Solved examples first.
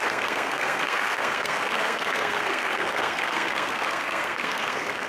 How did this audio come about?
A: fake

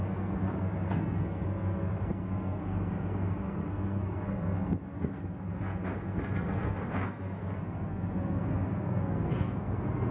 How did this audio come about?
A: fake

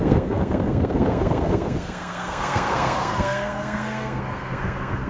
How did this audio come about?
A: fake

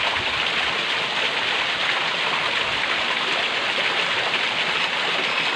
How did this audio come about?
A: real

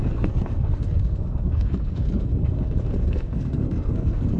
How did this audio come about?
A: fake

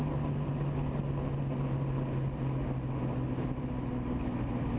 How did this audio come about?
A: real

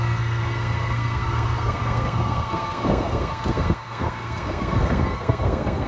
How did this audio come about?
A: fake